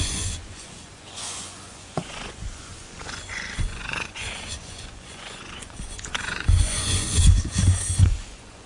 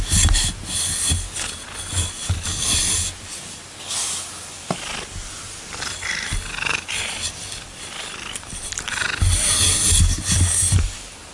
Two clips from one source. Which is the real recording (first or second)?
second